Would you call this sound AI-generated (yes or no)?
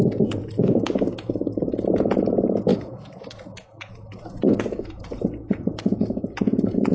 yes